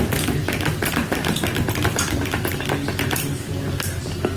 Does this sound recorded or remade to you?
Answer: recorded